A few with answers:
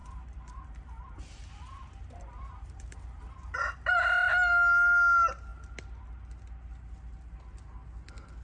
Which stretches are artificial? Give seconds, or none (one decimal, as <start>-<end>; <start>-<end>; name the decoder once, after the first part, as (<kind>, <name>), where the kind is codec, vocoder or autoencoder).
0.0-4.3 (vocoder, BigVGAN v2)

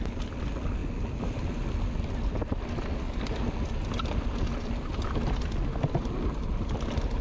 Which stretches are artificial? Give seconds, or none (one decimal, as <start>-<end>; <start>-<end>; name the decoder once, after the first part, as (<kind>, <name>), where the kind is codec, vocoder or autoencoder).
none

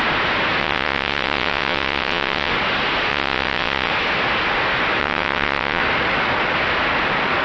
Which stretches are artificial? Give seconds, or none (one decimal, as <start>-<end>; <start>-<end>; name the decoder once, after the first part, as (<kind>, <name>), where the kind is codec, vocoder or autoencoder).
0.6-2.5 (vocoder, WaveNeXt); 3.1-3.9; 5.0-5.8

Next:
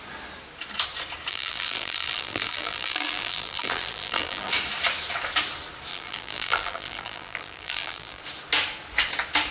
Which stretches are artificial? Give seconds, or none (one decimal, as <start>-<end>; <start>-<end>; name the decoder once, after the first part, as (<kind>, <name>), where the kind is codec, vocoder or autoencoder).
1.3-4.5 (vocoder, BigVGAN v2); 5.9-8.2

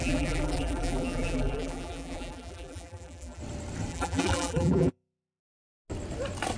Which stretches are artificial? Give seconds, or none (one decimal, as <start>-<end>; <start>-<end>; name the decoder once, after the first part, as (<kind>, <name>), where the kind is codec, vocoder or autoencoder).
0.0-3.4 (vocoder, BigVGAN v2); 3.9-5.4

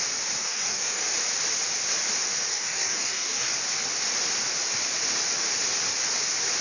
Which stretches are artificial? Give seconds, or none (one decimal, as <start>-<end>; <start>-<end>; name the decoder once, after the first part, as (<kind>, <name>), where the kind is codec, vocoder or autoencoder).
0.4-1.0 (codec, DAC); 2.5-3.5

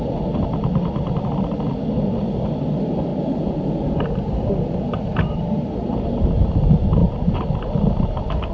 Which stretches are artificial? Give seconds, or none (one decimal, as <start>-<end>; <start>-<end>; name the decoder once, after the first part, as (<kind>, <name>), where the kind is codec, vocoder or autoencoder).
none